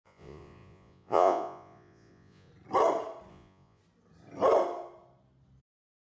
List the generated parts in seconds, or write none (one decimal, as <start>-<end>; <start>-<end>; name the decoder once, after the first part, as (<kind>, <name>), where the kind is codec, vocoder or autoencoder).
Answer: 0.0-2.5 (vocoder, Vocos); 3.3-3.8; 5.6-6.1